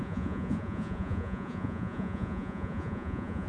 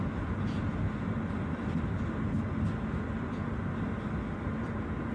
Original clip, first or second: second